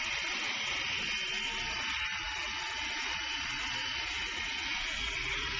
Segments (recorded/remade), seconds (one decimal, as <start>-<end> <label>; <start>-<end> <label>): 0.0-2.1 recorded; 2.1-5.6 remade